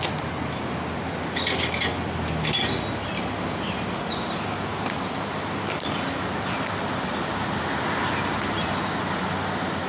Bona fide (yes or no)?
yes